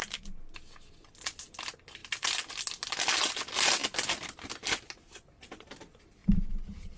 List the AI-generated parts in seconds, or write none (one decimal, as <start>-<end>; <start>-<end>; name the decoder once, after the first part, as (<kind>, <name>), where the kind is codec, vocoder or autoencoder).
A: 6.2-7.0 (vocoder, BigVGAN v2)